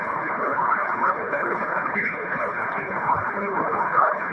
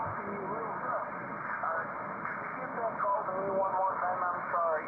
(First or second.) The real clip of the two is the second